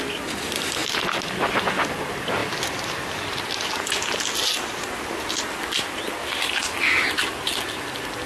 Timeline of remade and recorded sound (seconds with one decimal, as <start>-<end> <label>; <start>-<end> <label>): 0.0-8.3 recorded